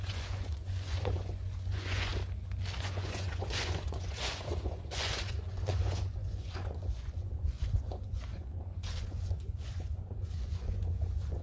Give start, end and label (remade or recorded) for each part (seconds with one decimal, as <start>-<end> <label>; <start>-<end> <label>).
0.0-2.1 remade; 2.1-2.8 recorded; 2.8-11.4 remade